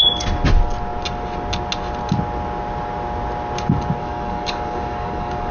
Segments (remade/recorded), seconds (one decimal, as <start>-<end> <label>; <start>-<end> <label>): 0.0-4.0 recorded; 4.0-5.5 remade